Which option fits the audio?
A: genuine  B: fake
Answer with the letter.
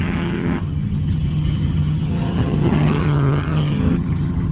B